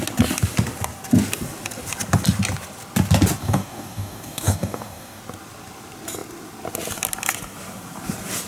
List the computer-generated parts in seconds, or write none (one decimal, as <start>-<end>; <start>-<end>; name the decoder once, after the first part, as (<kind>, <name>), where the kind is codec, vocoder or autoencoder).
3.4-5.2 (codec, DAC)